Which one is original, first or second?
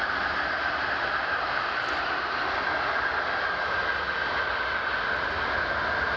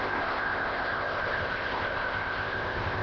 first